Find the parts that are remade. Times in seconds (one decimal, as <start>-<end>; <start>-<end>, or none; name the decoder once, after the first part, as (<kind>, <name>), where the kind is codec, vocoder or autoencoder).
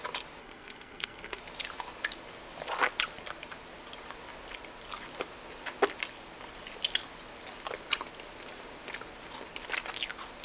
0.4-1.4 (codec, SNAC)